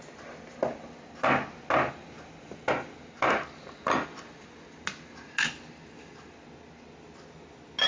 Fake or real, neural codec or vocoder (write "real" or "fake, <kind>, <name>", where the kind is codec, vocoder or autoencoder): real